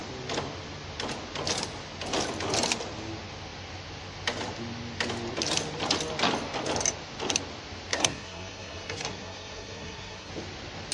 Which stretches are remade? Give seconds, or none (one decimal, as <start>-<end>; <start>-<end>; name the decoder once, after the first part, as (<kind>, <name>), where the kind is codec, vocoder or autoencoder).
7.9-10.3 (codec, SNAC)